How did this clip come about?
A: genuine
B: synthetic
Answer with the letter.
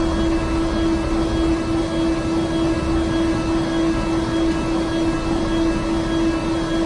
A